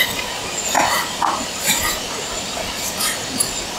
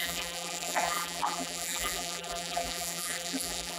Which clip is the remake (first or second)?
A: second